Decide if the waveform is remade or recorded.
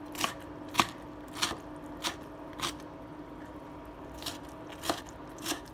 recorded